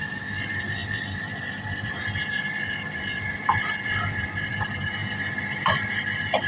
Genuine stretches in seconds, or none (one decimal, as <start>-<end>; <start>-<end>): 5.0-5.6